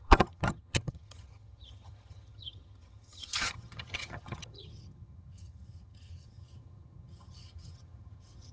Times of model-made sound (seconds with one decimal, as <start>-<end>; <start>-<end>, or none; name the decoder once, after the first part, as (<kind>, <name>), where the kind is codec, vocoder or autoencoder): 0.0-8.5 (vocoder, HiFi-GAN)